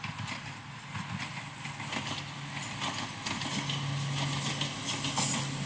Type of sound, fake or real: real